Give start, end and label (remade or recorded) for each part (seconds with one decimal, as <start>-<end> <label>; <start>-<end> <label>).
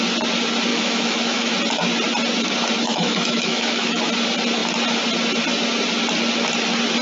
0.0-0.7 recorded; 0.7-1.5 remade; 1.5-2.9 recorded; 2.9-4.0 remade; 4.0-7.0 recorded